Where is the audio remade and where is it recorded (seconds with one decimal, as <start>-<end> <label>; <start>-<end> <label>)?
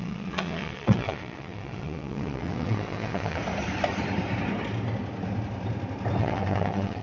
0.0-3.4 remade; 3.4-6.2 recorded; 6.2-7.0 remade